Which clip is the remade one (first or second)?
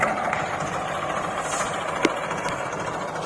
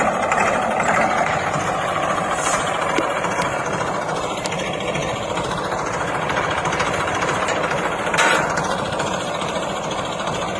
second